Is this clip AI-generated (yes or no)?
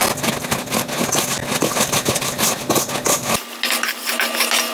no